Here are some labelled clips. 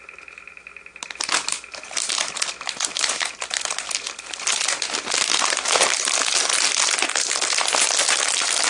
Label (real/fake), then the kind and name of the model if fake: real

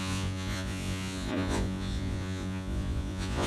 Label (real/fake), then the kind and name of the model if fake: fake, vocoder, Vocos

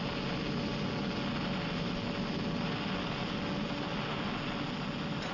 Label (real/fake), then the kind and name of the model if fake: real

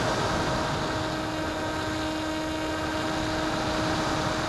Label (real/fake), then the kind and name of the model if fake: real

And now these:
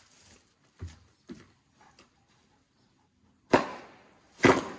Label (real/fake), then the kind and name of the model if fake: real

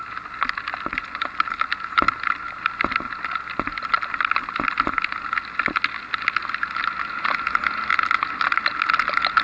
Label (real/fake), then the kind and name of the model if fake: real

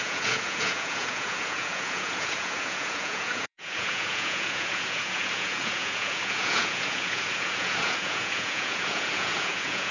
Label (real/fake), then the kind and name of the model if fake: fake, vocoder, Vocos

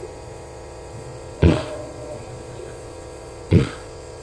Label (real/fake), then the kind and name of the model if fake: fake, vocoder, Vocos